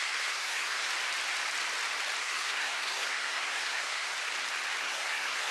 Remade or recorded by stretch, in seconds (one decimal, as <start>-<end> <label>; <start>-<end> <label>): 0.0-0.9 remade; 0.9-2.2 recorded; 2.2-4.1 remade; 4.1-4.8 recorded; 4.8-5.5 remade